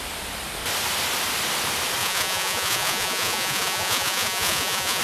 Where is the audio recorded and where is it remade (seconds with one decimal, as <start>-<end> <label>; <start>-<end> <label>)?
0.0-2.0 recorded; 2.0-5.0 remade